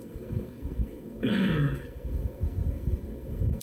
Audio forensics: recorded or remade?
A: remade